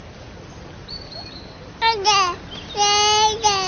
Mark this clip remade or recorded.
recorded